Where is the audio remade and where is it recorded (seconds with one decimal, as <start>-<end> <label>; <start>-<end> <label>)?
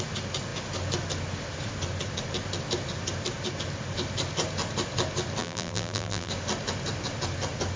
0.0-5.4 recorded; 5.4-6.3 remade; 6.3-7.8 recorded